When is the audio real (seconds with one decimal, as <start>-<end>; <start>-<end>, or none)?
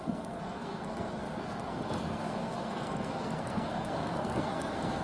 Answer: none